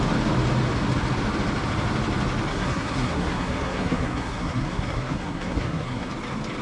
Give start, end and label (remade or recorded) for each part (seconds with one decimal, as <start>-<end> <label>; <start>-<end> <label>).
0.0-2.5 recorded; 2.5-6.1 remade; 6.1-6.6 recorded